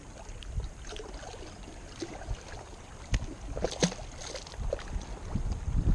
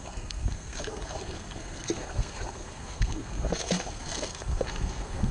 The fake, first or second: second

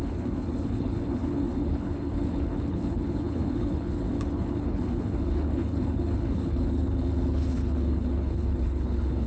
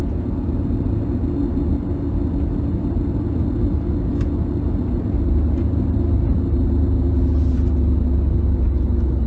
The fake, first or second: first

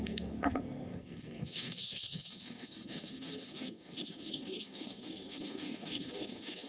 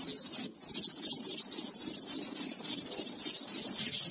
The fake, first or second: first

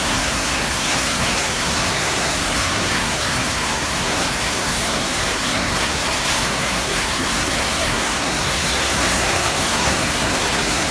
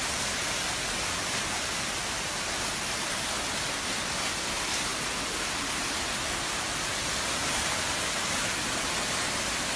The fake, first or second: first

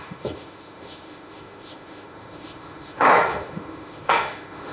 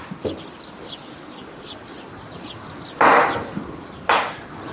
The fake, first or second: first